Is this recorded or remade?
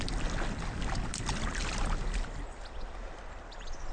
recorded